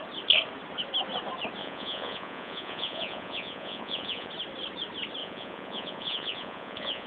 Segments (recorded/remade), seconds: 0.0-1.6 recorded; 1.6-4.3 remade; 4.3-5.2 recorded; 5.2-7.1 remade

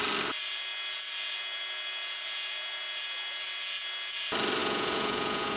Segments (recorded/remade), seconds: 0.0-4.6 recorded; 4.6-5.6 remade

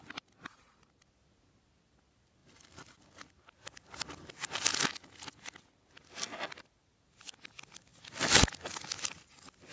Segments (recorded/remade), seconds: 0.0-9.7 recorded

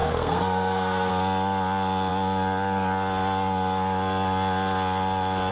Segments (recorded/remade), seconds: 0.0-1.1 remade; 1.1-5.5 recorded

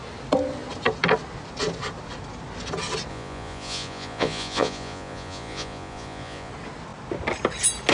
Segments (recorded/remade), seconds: 0.0-3.1 recorded; 3.1-6.5 remade; 6.5-7.9 recorded